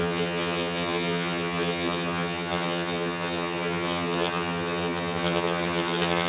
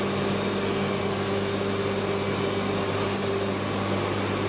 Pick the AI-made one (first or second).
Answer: first